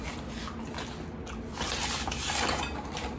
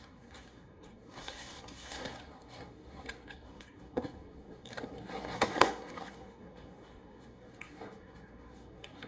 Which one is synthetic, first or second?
second